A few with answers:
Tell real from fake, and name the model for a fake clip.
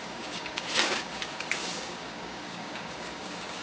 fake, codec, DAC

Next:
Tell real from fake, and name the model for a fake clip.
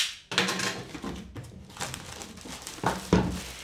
real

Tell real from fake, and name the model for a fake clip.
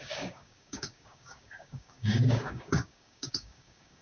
fake, codec, DAC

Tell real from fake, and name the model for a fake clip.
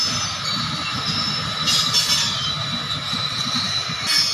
real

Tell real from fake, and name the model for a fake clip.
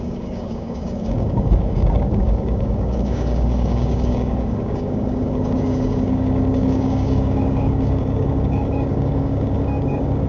fake, codec, DAC